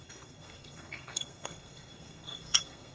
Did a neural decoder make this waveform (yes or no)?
yes